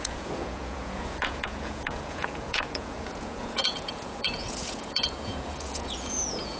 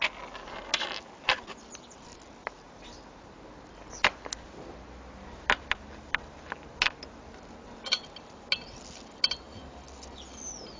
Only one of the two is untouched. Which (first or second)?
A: second